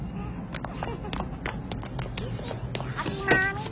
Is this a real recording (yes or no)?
yes